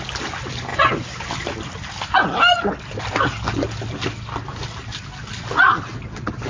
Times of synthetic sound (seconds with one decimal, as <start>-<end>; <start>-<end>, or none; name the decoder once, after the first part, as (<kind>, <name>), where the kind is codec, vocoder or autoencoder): none